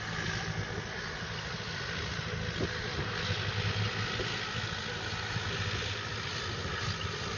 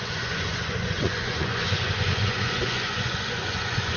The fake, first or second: second